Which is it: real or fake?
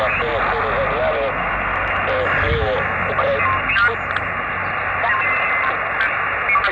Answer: real